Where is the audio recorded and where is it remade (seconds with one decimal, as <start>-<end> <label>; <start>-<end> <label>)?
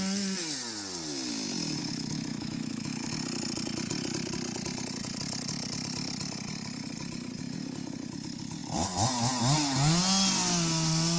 0.0-1.8 recorded; 1.8-3.1 remade; 3.1-11.2 recorded